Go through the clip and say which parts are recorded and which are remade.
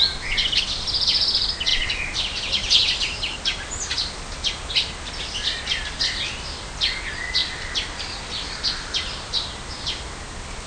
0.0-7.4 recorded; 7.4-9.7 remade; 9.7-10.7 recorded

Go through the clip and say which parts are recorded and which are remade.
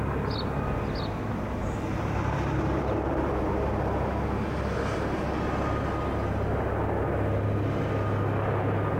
0.0-9.0 recorded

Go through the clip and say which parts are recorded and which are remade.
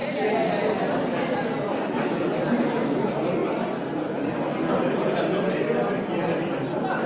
0.0-7.1 recorded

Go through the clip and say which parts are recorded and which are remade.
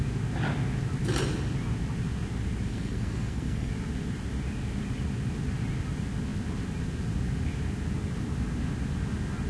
0.0-2.7 recorded; 2.7-3.7 remade; 3.7-9.5 recorded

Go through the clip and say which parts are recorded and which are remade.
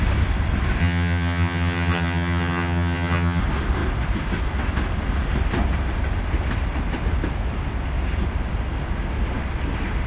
0.0-0.8 recorded; 0.8-3.4 remade; 3.4-10.1 recorded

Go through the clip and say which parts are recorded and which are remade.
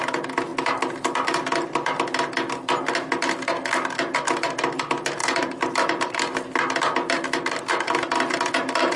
0.0-9.0 recorded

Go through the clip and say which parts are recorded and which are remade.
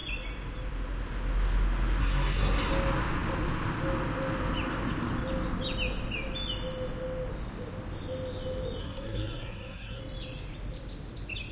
0.0-2.0 recorded; 2.0-2.7 remade; 2.7-8.8 recorded; 8.8-10.0 remade; 10.0-11.5 recorded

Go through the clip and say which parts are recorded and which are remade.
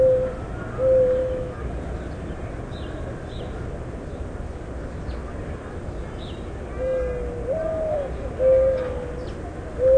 0.0-1.2 recorded; 1.2-1.7 remade; 1.7-10.0 recorded